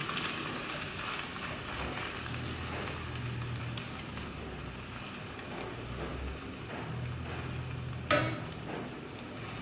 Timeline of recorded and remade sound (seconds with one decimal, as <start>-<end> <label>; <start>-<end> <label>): 0.0-9.6 recorded